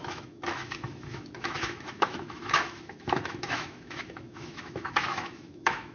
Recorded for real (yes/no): no